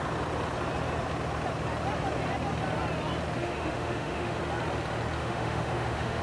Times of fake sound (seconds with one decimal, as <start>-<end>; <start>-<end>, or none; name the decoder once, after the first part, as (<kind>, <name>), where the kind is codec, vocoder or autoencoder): 3.4-4.4 (autoencoder, DAC-VAE); 5.2-6.2